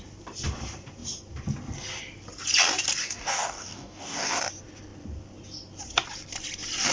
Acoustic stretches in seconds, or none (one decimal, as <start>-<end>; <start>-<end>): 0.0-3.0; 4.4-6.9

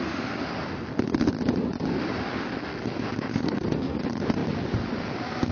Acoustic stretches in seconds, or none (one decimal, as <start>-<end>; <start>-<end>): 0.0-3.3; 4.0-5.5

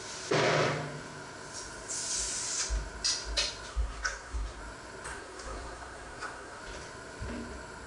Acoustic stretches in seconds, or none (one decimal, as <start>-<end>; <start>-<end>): 0.0-3.7; 4.6-5.1; 6.6-7.9